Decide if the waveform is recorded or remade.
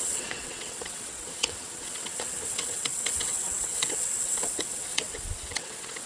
remade